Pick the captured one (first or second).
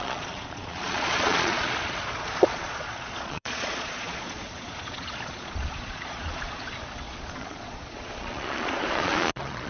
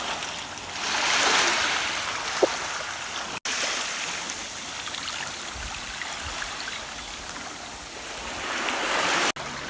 second